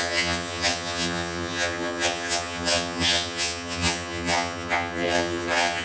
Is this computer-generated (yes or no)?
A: yes